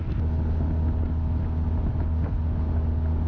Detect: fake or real real